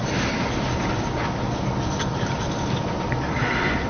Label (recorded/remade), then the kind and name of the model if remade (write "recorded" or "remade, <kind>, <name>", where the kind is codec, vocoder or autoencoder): recorded